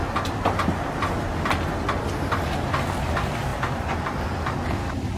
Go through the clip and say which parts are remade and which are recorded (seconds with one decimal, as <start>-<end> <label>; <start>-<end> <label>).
0.0-5.2 recorded